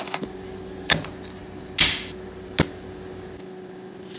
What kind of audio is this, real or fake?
real